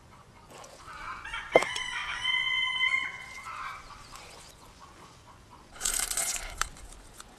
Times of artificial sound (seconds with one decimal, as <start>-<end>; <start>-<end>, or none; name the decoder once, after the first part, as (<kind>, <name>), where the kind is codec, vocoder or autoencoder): 0.0-7.4 (vocoder, Vocos)